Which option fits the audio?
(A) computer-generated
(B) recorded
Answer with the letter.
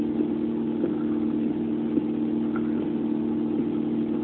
B